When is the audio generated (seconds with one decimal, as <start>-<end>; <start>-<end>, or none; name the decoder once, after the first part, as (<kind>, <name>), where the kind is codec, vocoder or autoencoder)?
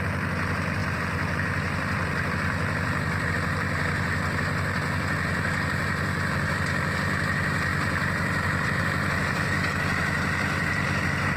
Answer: 0.8-3.3 (vocoder, BigVGAN v2); 7.7-8.8